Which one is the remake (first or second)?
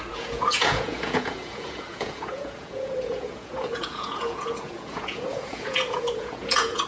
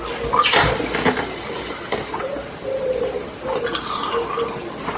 first